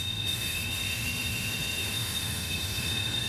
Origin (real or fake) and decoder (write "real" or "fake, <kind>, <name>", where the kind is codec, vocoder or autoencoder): fake, autoencoder, DAC-VAE